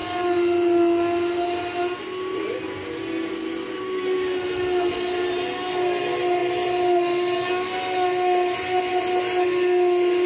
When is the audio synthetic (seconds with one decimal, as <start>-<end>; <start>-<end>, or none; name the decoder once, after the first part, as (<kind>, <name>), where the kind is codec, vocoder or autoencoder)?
none